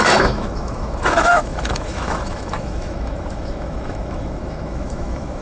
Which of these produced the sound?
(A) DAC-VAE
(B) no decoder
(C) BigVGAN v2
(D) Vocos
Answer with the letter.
A